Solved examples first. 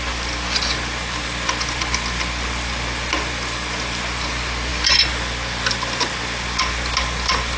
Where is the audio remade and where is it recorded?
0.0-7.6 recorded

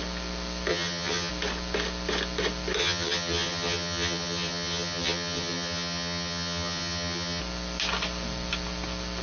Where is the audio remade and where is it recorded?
0.0-0.7 recorded; 0.7-1.3 remade; 1.3-2.8 recorded; 2.8-7.4 remade; 7.4-9.2 recorded

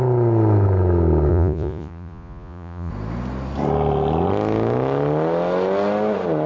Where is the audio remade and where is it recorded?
0.0-1.3 recorded; 1.3-2.9 remade; 2.9-6.5 recorded

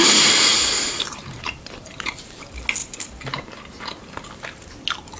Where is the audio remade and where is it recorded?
0.0-0.5 recorded; 0.5-2.4 remade; 2.4-2.8 recorded; 2.8-3.8 remade; 3.8-5.2 recorded

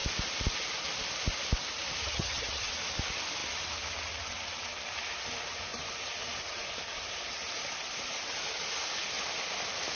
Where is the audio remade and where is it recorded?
0.0-2.0 recorded; 2.0-2.7 remade; 2.7-10.0 recorded